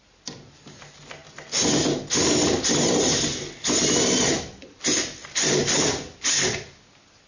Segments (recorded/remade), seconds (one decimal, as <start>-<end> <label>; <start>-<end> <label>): 0.0-7.3 recorded